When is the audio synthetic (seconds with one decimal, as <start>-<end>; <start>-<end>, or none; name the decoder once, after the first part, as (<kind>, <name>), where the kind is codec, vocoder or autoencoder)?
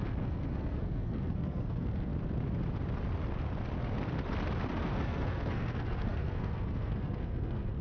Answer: 0.0-2.1 (codec, SNAC); 4.7-7.8